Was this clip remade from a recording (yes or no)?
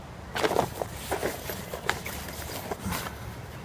no